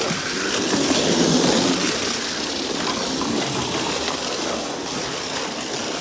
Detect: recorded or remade recorded